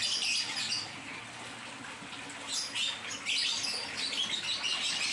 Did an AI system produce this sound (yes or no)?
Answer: no